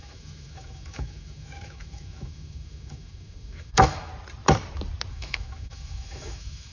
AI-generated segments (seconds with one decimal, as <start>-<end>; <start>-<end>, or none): 0.0-4.1; 5.1-6.7